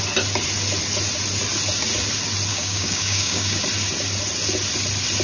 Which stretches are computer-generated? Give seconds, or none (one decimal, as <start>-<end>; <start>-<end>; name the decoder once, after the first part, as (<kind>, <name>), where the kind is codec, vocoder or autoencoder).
2.5-3.6 (codec, DAC)

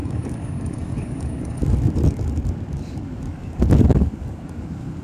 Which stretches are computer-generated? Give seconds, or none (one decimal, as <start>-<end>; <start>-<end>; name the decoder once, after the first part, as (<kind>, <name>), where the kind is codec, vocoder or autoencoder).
0.0-5.0 (codec, DAC)

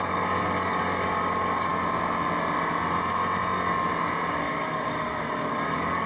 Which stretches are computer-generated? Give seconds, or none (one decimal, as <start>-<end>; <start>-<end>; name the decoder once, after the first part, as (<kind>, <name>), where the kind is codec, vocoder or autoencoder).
0.0-1.7 (codec, DAC); 4.3-6.1

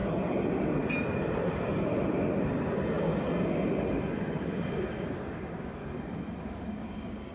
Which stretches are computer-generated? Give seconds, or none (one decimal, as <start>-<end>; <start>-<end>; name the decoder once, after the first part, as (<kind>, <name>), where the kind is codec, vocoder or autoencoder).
4.4-5.8 (codec, DAC); 6.4-7.3